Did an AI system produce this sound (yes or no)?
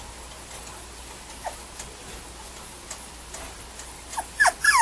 no